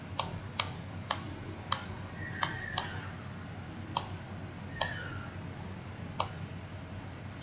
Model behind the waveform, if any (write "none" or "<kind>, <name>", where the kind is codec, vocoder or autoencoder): none